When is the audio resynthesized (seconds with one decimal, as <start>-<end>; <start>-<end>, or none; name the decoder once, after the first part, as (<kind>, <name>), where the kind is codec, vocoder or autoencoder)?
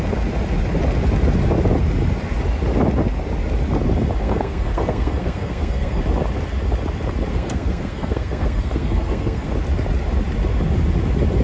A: 4.2-6.0 (codec, SNAC); 7.3-9.5